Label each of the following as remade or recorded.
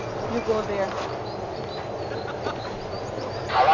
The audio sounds recorded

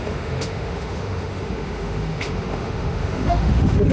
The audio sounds remade